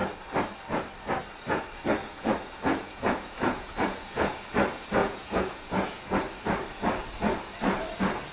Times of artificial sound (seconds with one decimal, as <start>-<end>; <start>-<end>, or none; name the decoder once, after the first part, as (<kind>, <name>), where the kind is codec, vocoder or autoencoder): 2.0-4.4 (vocoder, Vocos); 5.0-6.2